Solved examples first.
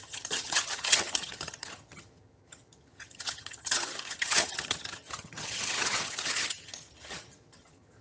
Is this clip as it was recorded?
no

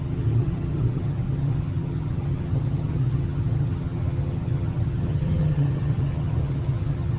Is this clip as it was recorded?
no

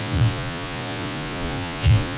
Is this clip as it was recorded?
no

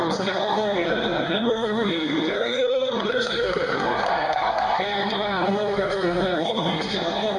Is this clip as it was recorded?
no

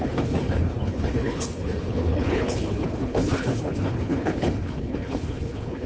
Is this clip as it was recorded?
no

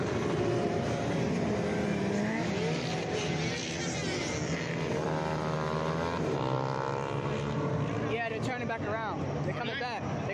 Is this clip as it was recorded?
yes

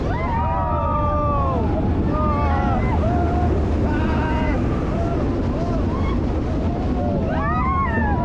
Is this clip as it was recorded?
yes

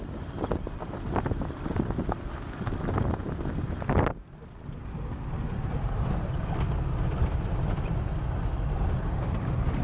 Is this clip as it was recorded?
yes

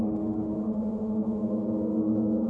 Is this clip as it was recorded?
no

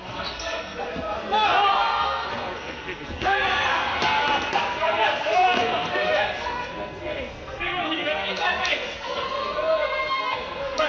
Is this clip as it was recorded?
no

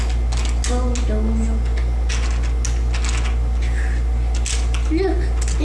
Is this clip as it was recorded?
yes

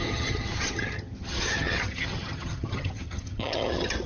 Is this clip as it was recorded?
no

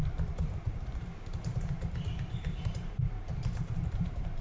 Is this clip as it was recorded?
no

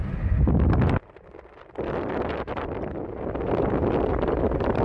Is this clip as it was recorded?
yes